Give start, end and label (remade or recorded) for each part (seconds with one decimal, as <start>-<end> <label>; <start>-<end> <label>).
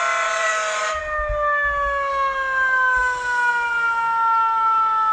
0.0-0.4 recorded; 0.4-1.0 remade; 1.0-5.1 recorded